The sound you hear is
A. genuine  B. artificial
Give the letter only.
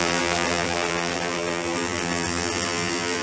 B